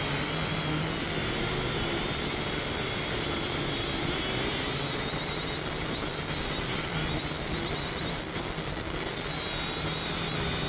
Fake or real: real